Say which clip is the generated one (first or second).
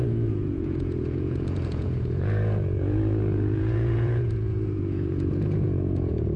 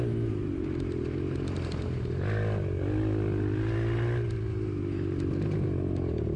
first